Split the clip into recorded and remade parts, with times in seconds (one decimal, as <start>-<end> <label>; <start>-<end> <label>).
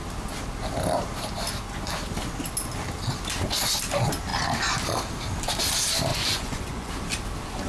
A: 0.0-6.1 recorded; 6.1-6.9 remade; 6.9-7.7 recorded